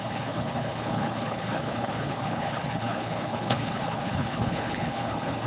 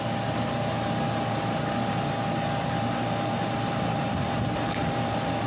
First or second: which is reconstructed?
first